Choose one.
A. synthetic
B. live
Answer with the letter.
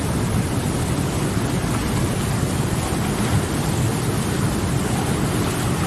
B